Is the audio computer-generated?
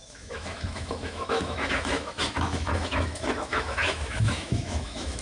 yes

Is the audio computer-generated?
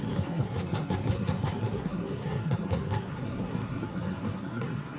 yes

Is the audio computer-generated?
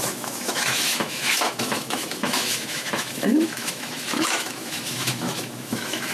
yes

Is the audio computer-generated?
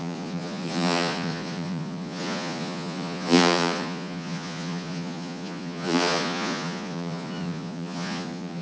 yes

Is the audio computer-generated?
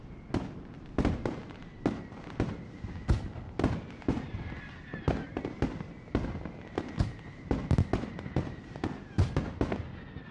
no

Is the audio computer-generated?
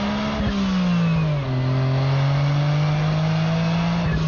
no